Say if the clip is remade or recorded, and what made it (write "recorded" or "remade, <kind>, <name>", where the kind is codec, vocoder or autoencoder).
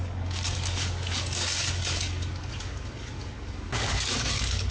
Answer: remade, codec, DAC